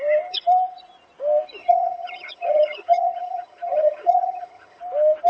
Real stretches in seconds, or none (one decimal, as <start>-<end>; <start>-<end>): 0.0-1.6; 4.8-5.3